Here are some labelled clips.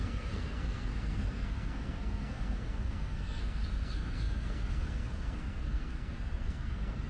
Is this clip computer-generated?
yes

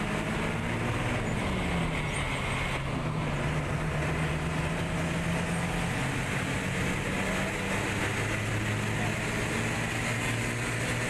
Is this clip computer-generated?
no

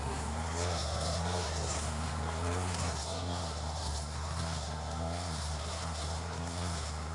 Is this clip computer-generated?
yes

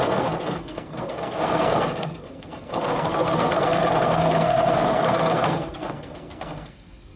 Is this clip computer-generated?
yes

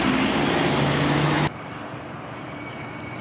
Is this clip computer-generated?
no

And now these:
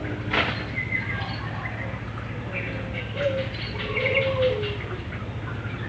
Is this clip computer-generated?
no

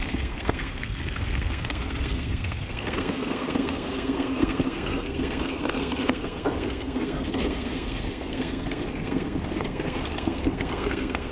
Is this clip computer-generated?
yes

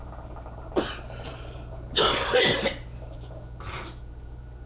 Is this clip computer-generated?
no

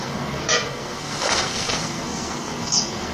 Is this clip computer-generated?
yes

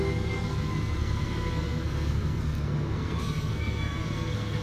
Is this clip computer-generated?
yes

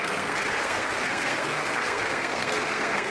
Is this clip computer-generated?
yes